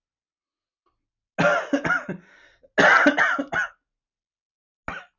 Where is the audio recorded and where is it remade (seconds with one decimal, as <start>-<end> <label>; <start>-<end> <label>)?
0.0-5.2 recorded

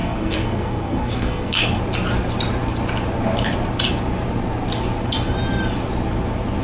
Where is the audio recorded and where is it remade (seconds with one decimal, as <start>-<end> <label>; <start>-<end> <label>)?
0.0-1.8 remade; 1.8-6.6 recorded